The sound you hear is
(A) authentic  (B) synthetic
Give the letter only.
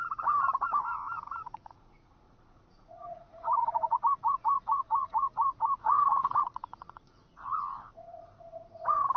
B